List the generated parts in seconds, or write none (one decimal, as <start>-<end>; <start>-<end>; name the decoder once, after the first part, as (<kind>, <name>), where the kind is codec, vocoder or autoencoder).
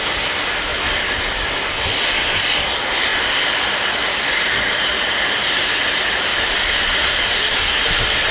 none